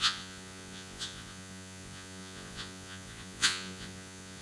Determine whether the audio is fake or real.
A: fake